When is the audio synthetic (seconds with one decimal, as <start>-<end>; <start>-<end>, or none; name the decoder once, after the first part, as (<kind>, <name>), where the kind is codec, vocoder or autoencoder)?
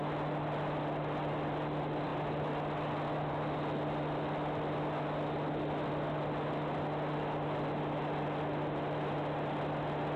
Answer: none